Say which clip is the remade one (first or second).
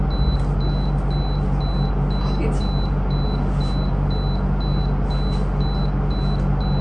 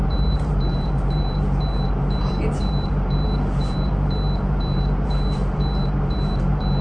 second